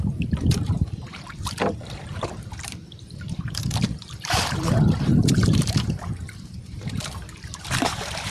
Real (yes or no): no